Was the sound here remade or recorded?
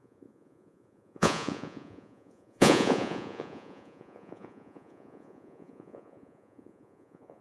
remade